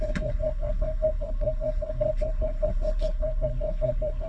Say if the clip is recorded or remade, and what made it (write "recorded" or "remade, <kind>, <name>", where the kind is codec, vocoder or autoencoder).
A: remade, codec, SNAC